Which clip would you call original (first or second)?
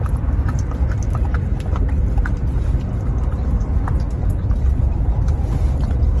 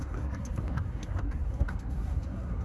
first